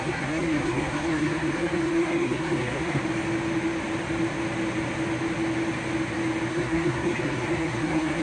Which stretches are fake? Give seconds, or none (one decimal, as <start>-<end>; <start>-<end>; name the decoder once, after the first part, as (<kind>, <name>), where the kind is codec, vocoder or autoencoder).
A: 0.0-3.0 (codec, SNAC); 6.5-8.2